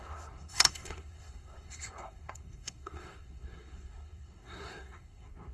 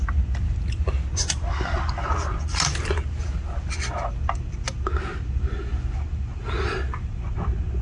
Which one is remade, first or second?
first